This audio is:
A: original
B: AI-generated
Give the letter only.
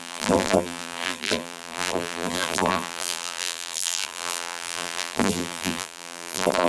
B